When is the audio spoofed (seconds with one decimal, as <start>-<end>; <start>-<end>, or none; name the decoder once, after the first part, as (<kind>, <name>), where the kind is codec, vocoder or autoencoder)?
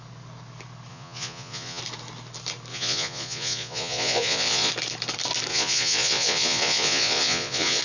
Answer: 0.9-1.8 (vocoder, Vocos); 2.7-4.7; 5.5-7.8